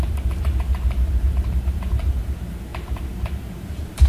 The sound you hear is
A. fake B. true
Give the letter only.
A